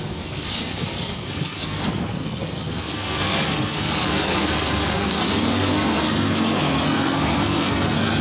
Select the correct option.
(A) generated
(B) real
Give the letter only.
A